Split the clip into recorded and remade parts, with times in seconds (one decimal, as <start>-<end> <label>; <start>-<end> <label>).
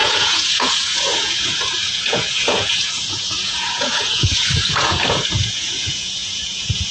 0.0-6.9 remade